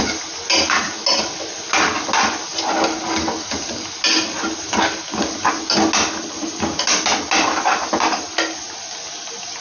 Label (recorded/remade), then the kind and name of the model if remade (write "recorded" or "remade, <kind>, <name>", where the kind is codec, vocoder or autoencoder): recorded